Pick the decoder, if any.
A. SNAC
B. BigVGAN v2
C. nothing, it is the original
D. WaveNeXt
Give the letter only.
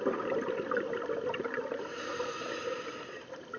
C